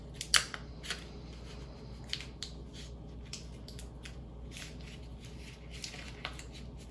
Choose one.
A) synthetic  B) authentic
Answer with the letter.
B